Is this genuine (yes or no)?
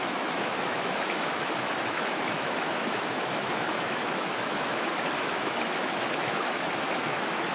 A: no